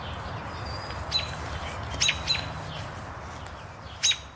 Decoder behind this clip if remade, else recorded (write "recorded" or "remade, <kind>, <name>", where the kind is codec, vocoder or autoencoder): recorded